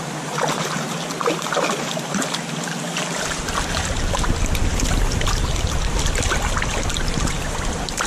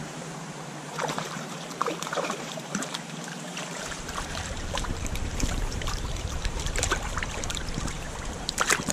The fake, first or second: second